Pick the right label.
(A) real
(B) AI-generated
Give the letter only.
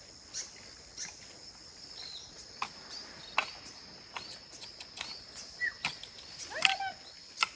A